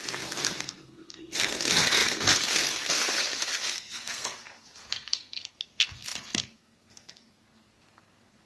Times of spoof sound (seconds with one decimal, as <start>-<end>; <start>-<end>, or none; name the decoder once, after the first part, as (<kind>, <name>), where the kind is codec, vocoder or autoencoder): 0.0-8.5 (codec, SNAC)